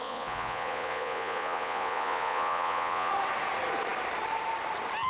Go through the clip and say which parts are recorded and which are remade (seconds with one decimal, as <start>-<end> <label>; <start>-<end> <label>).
0.0-3.1 remade; 3.1-5.1 recorded